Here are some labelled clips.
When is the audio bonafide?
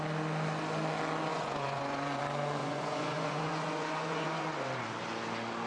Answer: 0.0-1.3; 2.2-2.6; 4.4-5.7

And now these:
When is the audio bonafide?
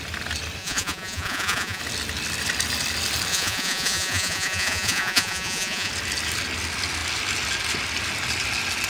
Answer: 0.0-0.6; 1.8-3.3; 5.9-8.9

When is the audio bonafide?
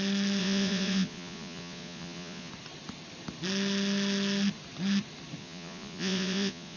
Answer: 0.0-0.4; 2.5-5.4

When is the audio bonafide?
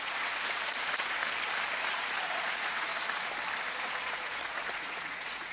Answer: 1.2-1.9; 2.9-3.8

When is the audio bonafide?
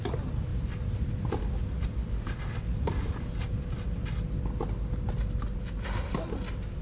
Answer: 0.0-6.8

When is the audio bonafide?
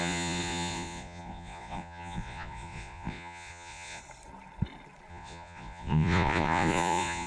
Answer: 4.0-5.1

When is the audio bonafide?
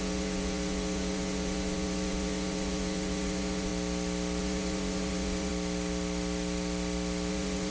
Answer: 3.7-4.4; 5.5-7.3